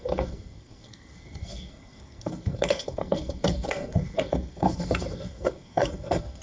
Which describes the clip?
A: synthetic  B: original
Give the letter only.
A